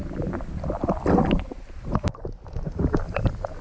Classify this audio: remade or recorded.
recorded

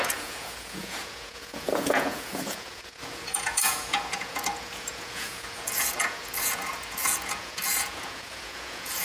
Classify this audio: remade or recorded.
remade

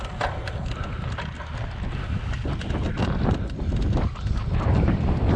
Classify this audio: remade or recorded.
recorded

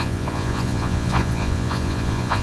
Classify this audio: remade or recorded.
remade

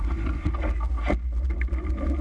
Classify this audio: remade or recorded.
recorded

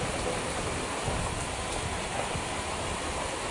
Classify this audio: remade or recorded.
recorded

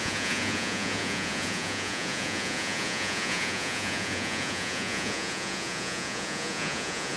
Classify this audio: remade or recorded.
remade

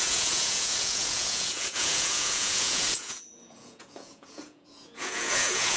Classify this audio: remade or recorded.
remade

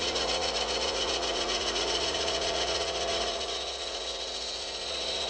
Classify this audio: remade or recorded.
remade